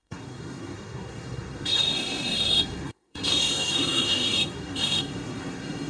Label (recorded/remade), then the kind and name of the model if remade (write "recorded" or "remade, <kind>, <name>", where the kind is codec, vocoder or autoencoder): remade, codec, SNAC